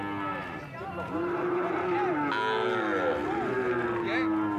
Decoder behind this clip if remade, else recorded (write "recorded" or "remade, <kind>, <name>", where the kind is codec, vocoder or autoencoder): recorded